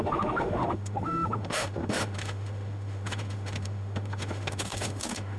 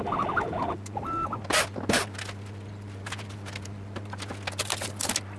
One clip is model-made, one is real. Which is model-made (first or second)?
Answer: first